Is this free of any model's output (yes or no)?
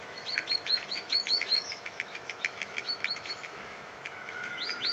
no